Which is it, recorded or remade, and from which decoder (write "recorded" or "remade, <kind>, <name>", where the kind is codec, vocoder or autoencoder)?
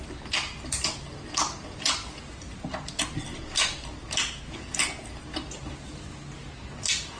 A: recorded